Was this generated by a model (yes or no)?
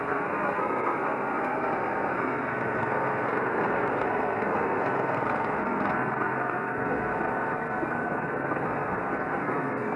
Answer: yes